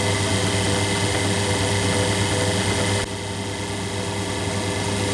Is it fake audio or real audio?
real